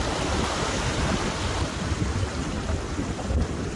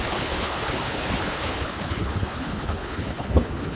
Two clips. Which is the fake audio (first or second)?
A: second